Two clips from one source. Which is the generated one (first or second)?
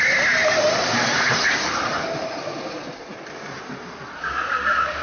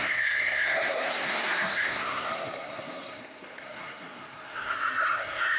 second